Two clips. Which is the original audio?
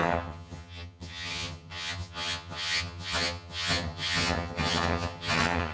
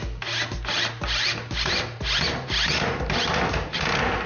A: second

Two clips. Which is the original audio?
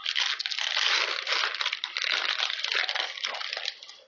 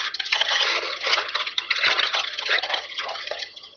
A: first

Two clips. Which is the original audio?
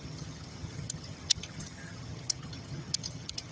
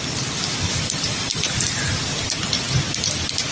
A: second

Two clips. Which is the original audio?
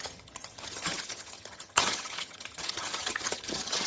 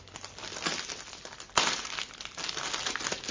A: second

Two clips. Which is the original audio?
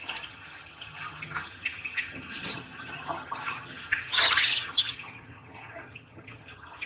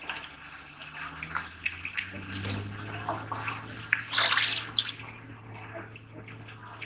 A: second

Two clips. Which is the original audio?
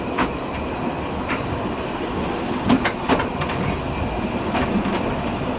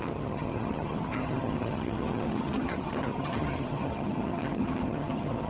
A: first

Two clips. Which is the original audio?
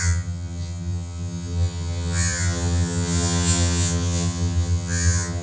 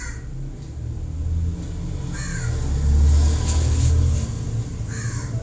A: second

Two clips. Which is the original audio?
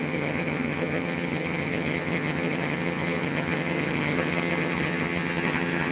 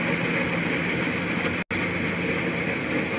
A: second